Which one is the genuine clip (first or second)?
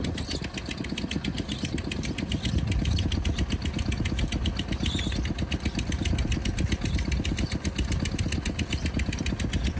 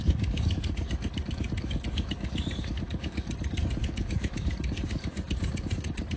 first